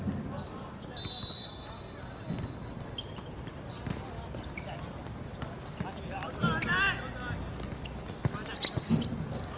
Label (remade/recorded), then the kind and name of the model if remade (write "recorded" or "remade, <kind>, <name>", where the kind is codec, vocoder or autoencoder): recorded